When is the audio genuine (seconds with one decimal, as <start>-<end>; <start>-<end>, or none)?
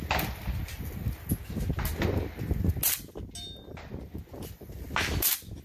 0.0-5.6